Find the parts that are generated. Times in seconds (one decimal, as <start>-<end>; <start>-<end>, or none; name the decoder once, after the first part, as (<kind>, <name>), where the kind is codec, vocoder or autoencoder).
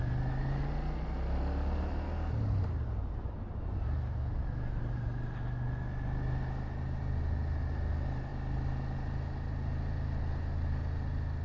none